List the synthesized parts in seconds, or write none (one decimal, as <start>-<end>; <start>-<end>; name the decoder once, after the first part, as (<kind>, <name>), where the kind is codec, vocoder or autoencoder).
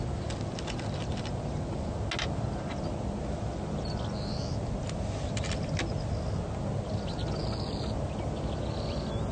none